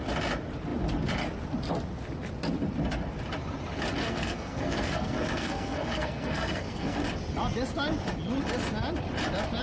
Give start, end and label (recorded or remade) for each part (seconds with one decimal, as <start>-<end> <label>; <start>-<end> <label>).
0.0-4.0 recorded; 4.0-7.0 remade; 7.0-9.6 recorded